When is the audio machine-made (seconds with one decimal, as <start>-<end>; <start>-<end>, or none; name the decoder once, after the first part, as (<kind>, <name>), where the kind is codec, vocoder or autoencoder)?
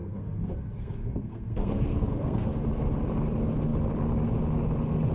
0.0-2.6 (codec, SNAC)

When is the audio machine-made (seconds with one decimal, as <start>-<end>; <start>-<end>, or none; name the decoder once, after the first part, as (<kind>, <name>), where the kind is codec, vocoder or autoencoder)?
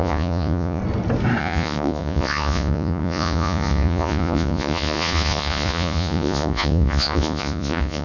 0.0-0.8 (vocoder, Vocos); 1.4-8.0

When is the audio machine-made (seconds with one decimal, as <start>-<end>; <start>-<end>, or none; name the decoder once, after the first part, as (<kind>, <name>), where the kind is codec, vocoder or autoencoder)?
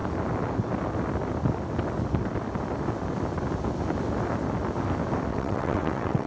5.3-6.3 (vocoder, WaveNeXt)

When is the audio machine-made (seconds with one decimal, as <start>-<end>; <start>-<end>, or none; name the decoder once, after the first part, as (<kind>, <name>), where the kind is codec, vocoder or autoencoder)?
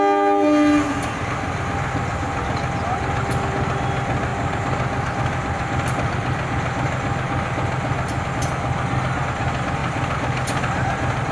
none